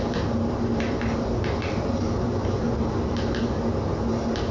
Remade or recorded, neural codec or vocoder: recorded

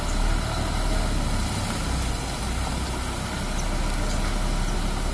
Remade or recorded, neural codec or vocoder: recorded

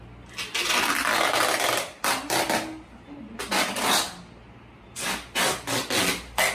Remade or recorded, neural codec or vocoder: recorded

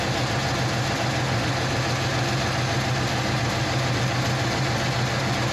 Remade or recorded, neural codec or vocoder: recorded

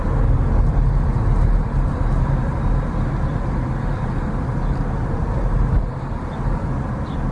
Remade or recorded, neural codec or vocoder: recorded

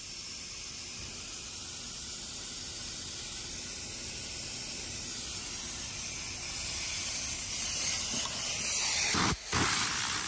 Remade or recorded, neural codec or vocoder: recorded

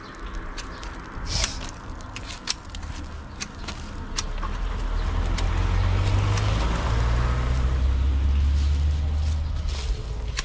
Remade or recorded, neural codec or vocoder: recorded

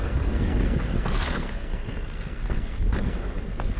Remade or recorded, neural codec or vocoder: remade, codec, SNAC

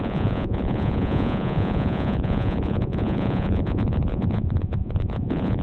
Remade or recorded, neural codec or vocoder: remade, vocoder, Vocos